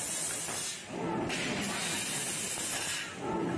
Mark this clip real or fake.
real